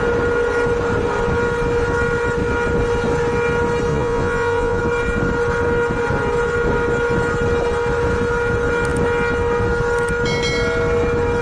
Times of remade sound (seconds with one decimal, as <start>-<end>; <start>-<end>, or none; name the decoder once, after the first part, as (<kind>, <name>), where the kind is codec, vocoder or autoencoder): 3.9-4.8 (vocoder, Vocos)